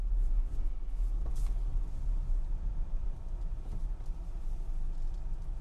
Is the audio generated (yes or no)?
no